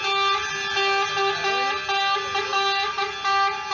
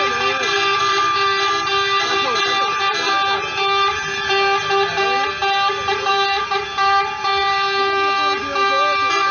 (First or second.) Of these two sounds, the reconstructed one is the second